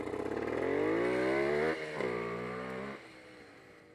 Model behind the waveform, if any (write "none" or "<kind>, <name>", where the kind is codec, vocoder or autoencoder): none